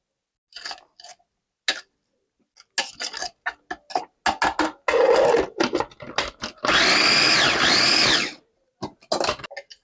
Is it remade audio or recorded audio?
recorded